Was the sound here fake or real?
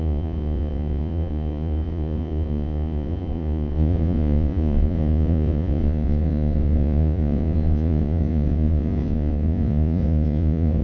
fake